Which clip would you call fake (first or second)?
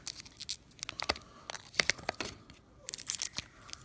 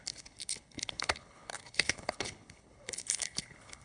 second